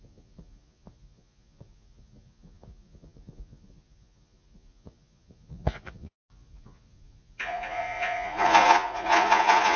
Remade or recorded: remade